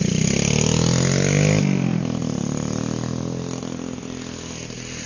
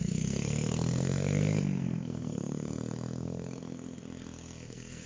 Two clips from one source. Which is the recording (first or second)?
first